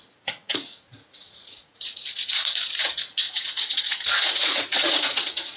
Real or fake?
fake